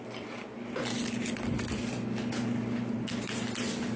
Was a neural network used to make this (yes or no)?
no